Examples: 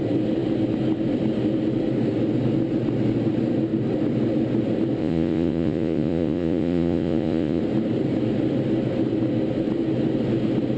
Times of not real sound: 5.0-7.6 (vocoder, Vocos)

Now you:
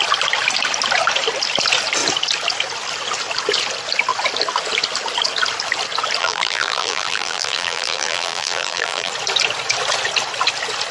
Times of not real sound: 6.2-9.1 (vocoder, BigVGAN v2)

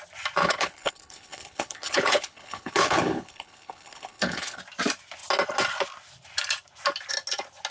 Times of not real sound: 0.4-4.6 (codec, HILCodec)

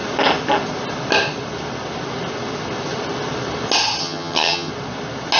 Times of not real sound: 4.0-4.7 (vocoder, HiFi-GAN)